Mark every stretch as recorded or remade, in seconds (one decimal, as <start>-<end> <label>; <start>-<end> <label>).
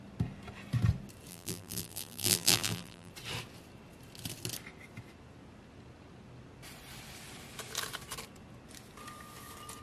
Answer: 0.0-1.3 recorded; 1.3-3.1 remade; 3.1-9.8 recorded